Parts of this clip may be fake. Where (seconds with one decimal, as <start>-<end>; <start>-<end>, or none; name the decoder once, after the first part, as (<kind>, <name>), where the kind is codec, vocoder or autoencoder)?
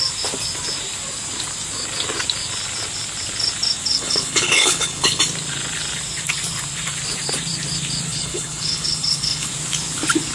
3.9-5.2 (codec, HILCodec); 8.1-9.5